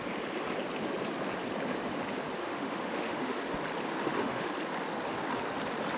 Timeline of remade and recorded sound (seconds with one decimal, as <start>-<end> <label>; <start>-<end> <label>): 0.0-2.4 recorded; 2.4-3.4 remade; 3.4-4.0 recorded; 4.0-4.5 remade; 4.5-6.0 recorded